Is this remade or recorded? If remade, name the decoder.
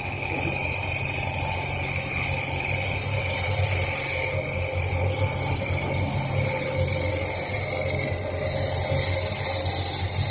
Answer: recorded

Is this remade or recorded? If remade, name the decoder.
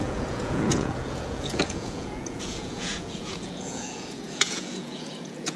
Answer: remade, vocoder, Vocos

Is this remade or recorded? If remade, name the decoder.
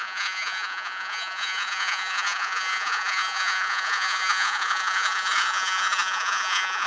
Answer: remade, vocoder, Vocos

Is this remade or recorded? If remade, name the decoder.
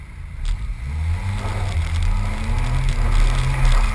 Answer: recorded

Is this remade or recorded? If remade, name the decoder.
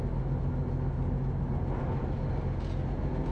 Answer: recorded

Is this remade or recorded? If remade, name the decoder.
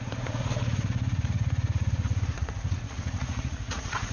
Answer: remade, vocoder, Vocos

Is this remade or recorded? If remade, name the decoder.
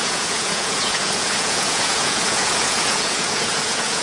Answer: remade, vocoder, Vocos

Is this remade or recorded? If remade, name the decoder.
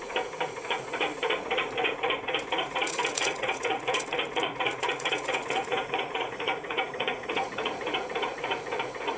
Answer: remade, vocoder, Vocos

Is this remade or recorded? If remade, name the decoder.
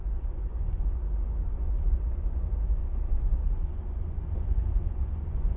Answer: remade, vocoder, Vocos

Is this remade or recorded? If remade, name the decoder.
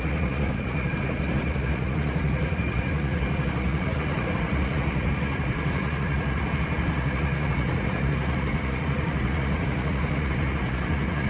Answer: remade, vocoder, Vocos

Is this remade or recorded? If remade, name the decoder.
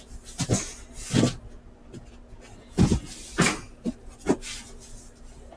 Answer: recorded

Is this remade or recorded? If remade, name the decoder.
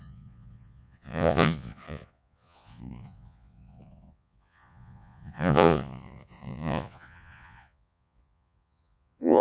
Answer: remade, vocoder, Vocos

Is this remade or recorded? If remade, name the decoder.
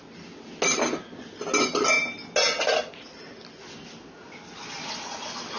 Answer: recorded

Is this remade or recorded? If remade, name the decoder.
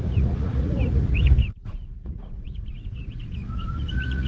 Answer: remade, vocoder, Vocos